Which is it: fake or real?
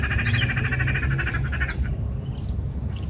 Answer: real